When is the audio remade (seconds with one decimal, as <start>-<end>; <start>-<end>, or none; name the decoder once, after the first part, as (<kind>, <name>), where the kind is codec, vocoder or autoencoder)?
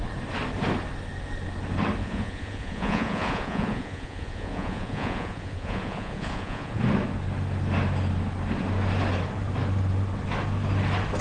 2.0-6.8 (vocoder, Vocos)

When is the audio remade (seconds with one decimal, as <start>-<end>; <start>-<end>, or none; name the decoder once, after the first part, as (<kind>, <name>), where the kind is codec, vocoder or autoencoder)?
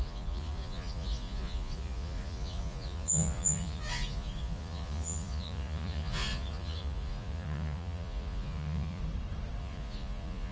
0.0-9.0 (vocoder, Vocos); 9.6-10.5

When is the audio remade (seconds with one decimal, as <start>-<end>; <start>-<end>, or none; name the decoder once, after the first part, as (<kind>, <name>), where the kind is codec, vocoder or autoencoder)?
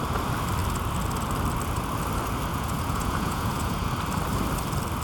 2.5-3.9 (vocoder, Vocos)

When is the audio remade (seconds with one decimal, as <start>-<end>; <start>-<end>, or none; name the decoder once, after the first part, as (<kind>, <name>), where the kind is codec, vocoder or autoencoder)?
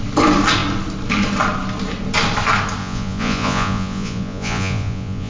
2.8-5.3 (vocoder, Vocos)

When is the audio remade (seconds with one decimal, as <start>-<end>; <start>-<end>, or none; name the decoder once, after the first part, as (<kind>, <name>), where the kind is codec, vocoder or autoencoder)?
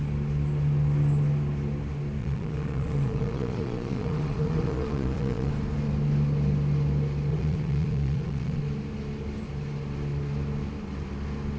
2.2-5.5 (vocoder, Vocos); 7.3-8.6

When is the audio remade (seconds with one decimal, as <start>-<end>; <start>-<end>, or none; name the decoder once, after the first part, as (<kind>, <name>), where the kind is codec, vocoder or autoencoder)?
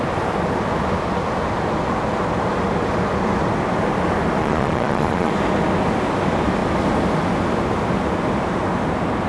4.4-5.3 (vocoder, Vocos)